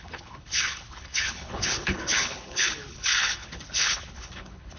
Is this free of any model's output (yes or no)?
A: no